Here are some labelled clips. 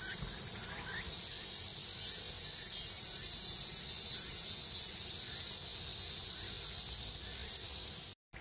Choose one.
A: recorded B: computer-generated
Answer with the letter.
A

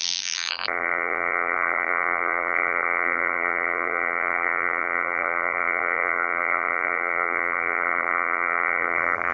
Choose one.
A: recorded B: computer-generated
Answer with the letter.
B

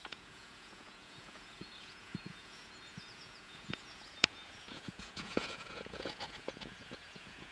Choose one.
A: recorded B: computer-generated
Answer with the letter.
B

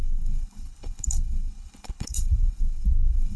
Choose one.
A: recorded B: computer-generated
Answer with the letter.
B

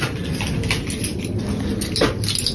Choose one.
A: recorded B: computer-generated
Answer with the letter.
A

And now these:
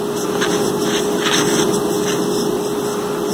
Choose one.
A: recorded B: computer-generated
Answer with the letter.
A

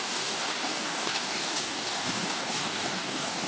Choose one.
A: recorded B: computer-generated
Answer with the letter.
B